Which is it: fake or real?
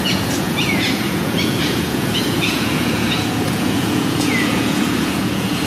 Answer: fake